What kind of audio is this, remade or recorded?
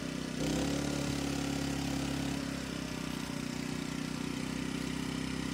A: recorded